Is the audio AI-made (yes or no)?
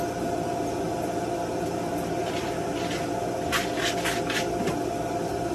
no